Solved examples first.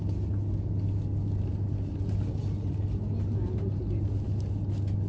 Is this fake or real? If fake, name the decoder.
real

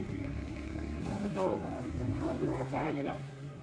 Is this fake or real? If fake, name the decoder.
fake, codec, SNAC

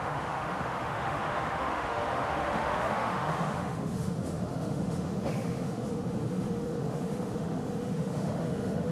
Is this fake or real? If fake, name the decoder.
fake, autoencoder, DAC-VAE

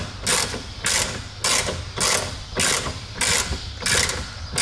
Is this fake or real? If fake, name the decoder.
real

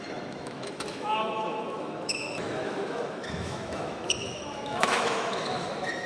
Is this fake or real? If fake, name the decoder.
fake, autoencoder, DAC-VAE